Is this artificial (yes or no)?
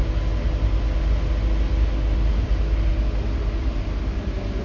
no